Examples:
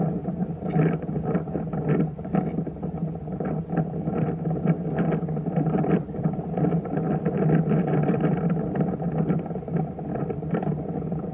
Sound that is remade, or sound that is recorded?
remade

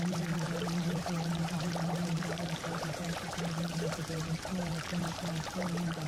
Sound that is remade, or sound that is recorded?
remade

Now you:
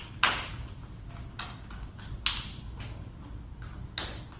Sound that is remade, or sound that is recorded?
recorded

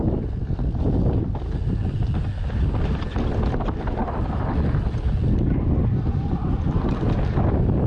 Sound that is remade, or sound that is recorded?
recorded